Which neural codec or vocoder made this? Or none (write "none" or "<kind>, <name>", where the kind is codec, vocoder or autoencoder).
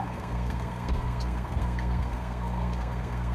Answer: codec, SNAC